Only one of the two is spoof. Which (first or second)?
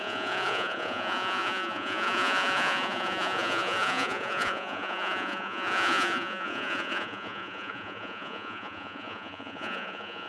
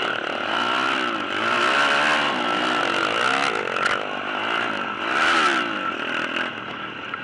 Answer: first